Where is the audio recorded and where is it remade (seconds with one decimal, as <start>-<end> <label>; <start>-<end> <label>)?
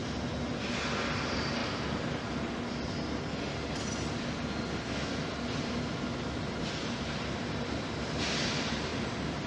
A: 0.0-1.2 recorded; 1.2-1.6 remade; 1.6-6.6 recorded; 6.6-8.9 remade; 8.9-9.5 recorded